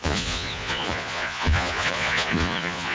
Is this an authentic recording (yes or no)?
no